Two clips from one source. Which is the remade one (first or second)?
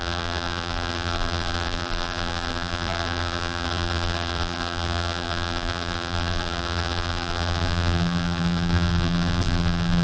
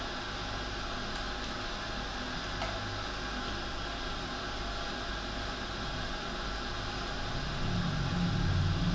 first